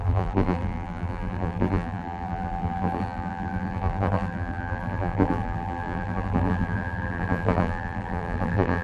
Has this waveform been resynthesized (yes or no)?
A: yes